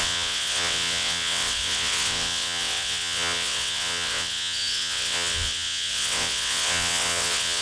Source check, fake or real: fake